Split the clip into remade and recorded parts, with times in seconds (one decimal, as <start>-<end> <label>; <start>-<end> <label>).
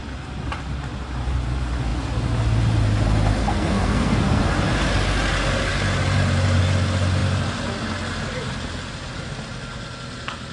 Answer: 0.0-3.4 recorded; 3.4-4.4 remade; 4.4-10.5 recorded